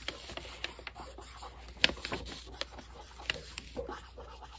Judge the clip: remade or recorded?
recorded